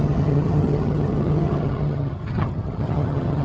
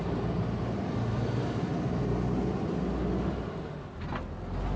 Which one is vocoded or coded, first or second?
first